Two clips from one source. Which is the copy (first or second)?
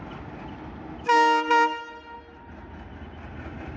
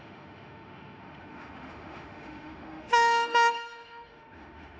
second